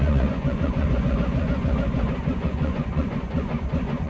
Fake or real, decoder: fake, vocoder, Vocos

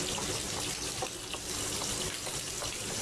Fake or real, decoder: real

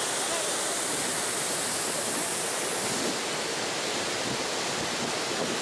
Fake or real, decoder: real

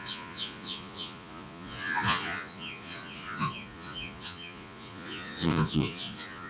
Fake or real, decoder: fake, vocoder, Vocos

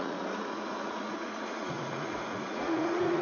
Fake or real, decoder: fake, vocoder, Vocos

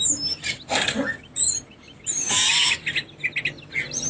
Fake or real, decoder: real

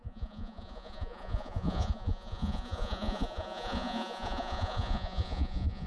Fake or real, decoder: fake, vocoder, Vocos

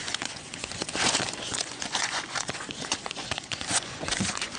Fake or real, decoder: fake, vocoder, Vocos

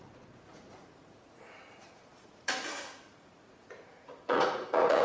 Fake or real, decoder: fake, vocoder, Vocos